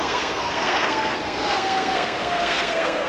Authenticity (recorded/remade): remade